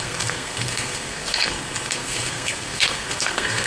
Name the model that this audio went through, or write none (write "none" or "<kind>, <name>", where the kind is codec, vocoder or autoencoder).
codec, SNAC